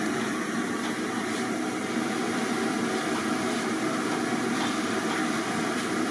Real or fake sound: real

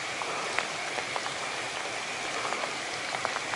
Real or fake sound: real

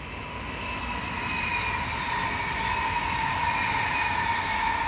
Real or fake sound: real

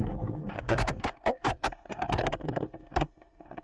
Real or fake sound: fake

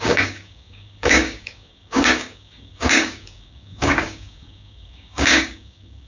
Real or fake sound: fake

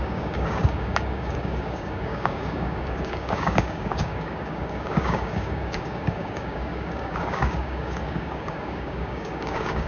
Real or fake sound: fake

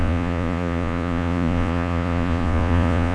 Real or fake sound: fake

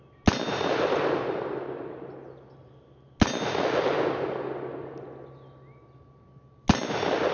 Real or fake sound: real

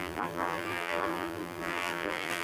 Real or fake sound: fake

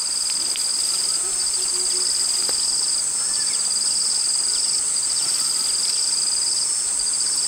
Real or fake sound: real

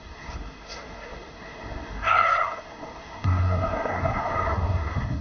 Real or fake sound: fake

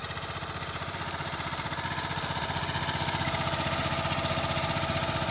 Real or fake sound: real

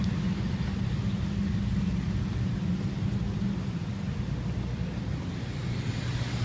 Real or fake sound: real